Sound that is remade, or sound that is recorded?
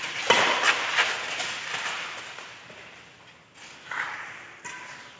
recorded